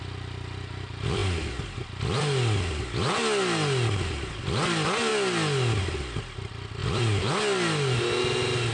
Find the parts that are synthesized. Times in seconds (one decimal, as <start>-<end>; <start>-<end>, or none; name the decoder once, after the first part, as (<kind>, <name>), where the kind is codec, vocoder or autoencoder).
none